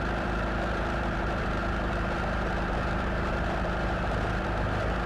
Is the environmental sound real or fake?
fake